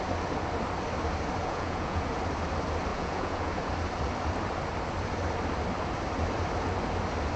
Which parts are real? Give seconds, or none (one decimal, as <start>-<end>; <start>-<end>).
0.0-1.4; 2.1-2.9; 3.7-7.4